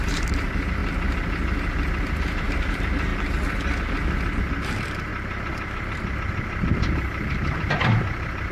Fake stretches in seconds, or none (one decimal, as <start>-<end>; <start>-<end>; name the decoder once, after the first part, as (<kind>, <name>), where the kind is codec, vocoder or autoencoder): 0.0-0.8 (vocoder, BigVGAN v2); 2.1-3.1; 4.4-8.5